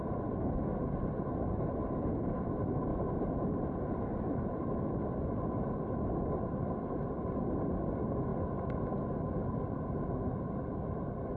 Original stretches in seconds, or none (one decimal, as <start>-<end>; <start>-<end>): 0.0-2.9; 7.7-11.4